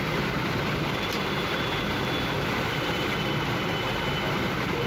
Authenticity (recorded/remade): recorded